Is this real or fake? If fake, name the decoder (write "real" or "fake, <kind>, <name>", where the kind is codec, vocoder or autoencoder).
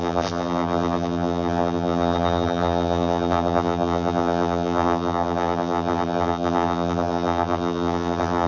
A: fake, vocoder, BigVGAN v2